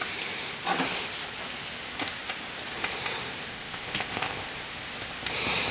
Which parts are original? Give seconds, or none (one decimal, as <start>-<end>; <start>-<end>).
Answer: 0.0-3.5; 4.4-5.7